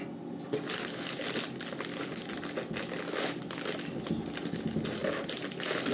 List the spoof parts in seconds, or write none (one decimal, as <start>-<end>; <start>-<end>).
none